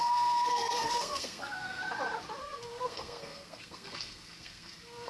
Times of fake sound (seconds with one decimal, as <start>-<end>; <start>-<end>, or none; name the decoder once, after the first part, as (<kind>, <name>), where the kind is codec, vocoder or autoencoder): 0.0-1.8 (codec, SNAC); 2.4-5.1